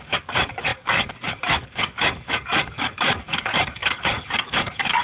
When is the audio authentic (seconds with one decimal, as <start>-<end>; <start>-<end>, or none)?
none